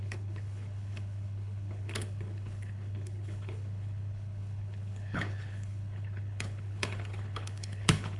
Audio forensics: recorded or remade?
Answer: remade